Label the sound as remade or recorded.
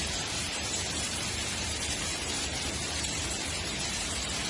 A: remade